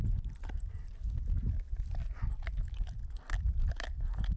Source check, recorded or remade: recorded